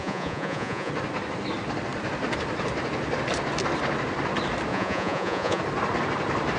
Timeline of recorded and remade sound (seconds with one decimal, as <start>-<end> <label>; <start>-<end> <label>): 0.0-0.9 remade; 0.9-4.7 recorded; 4.7-5.6 remade; 5.6-6.6 recorded